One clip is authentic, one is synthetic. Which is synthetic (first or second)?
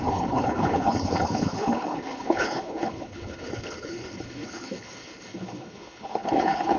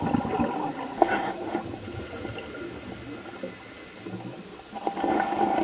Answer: first